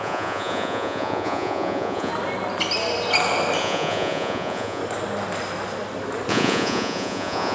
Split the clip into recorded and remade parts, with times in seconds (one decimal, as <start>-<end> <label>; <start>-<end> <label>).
0.0-2.1 remade; 2.1-3.6 recorded; 3.6-4.8 remade; 4.8-6.3 recorded; 6.3-7.5 remade